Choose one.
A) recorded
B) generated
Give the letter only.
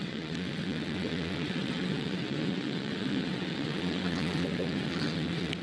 B